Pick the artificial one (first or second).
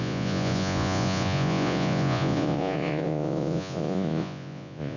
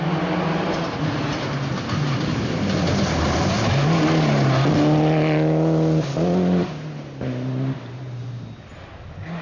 first